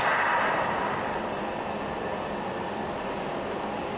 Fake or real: real